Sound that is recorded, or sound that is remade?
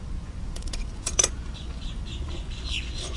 remade